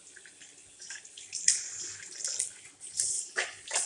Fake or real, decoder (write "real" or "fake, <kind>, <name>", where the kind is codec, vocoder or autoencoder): real